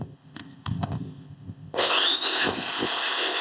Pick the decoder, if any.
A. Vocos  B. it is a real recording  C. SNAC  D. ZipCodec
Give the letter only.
D